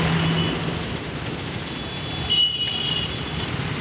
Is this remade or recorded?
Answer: recorded